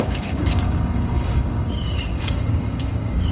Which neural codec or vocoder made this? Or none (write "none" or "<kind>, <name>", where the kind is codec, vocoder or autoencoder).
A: codec, DAC